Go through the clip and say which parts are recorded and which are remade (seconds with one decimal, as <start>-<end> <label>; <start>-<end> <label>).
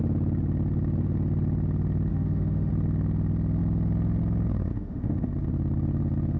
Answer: 0.0-2.1 recorded; 2.1-2.7 remade; 2.7-4.7 recorded; 4.7-5.3 remade; 5.3-6.4 recorded